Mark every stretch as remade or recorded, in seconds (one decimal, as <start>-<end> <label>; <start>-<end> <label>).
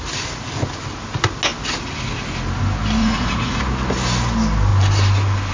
0.0-3.0 recorded; 3.0-3.6 remade; 3.6-5.5 recorded